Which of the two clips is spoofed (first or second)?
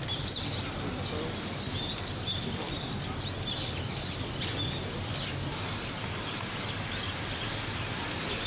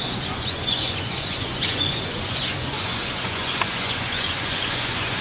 second